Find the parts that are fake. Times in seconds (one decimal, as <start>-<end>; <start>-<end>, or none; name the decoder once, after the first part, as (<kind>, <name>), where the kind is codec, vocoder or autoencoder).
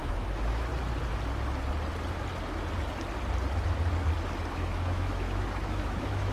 0.0-0.7 (autoencoder, DAC-VAE); 4.5-6.3